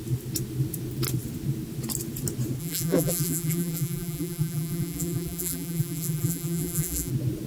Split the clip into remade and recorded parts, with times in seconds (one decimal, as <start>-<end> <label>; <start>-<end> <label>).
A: 0.0-2.6 recorded; 2.6-7.1 remade; 7.1-7.5 recorded